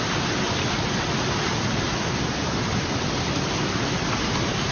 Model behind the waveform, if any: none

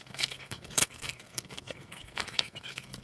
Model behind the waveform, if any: codec, SNAC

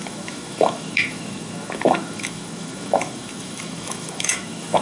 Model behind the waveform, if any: autoencoder, DAC-VAE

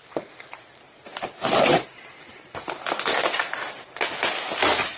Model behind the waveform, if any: vocoder, BigVGAN v2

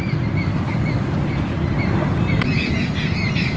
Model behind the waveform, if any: none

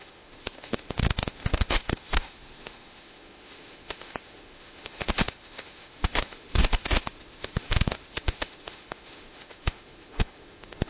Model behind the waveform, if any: autoencoder, DAC-VAE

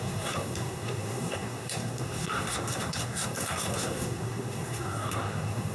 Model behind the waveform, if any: codec, SNAC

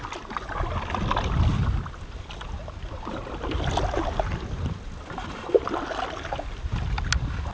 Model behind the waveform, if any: none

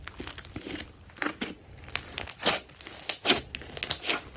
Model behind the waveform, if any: none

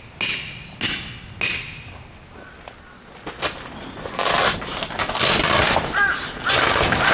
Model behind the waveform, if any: none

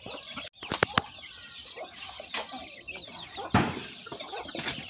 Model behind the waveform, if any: none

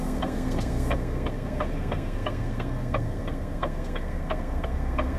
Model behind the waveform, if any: codec, SNAC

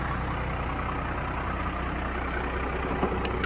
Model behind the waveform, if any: none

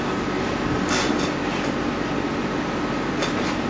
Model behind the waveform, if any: none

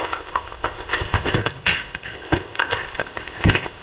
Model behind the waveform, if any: codec, ZipCodec